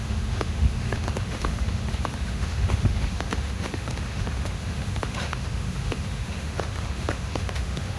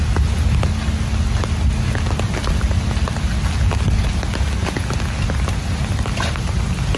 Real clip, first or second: second